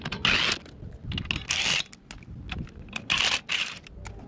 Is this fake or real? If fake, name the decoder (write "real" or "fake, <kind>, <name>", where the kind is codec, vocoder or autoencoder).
real